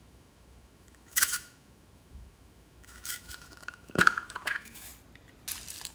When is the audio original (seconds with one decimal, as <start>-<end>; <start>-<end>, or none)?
4.9-5.9